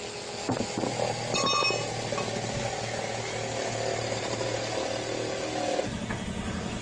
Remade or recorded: recorded